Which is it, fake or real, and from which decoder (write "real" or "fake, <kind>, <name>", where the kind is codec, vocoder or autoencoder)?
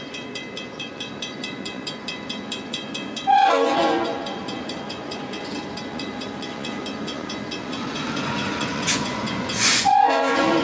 fake, vocoder, Vocos